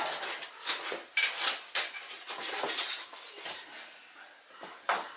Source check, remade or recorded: recorded